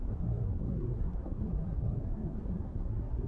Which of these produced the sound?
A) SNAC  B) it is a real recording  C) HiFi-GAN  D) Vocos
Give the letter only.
A